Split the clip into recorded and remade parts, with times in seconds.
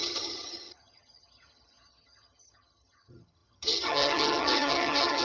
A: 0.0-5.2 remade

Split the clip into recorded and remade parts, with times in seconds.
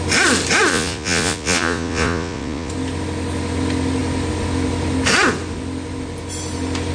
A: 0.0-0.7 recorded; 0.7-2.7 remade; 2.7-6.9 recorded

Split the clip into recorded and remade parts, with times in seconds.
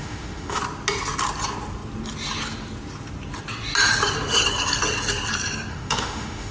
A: 0.0-0.6 remade; 0.6-5.7 recorded; 5.7-6.5 remade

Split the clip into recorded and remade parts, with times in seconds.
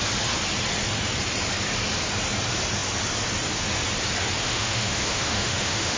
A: 0.0-4.4 recorded; 4.4-6.0 remade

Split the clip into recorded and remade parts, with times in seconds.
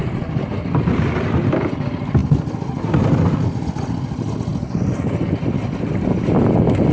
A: 0.0-0.7 remade; 0.7-4.5 recorded; 4.5-5.2 remade; 5.2-6.9 recorded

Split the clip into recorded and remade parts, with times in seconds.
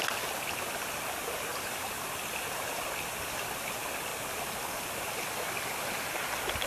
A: 0.0-1.5 recorded; 1.5-2.9 remade; 2.9-6.7 recorded